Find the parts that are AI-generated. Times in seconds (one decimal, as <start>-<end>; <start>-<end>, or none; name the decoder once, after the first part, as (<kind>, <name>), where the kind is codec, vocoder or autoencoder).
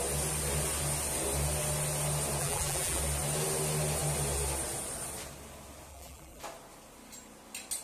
2.4-3.0 (vocoder, BigVGAN v2); 5.9-6.4